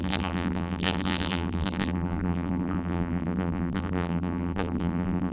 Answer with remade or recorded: remade